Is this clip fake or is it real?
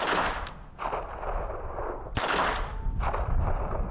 real